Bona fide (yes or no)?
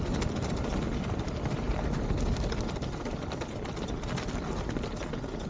yes